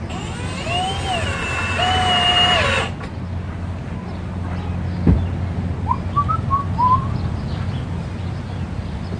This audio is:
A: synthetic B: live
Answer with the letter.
B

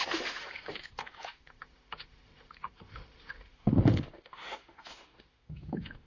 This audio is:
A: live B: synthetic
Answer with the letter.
B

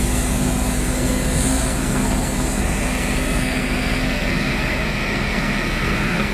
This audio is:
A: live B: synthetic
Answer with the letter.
B